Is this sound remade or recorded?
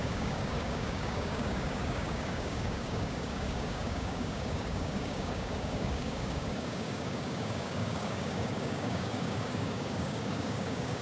remade